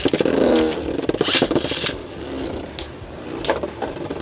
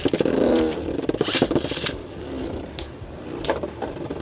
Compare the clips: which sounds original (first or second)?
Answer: first